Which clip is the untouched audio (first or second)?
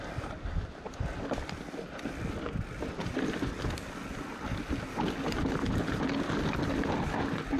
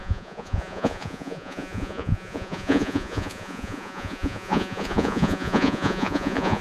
first